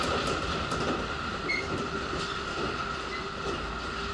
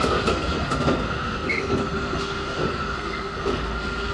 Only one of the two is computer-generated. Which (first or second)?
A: second